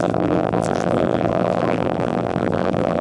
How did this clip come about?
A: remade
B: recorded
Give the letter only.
A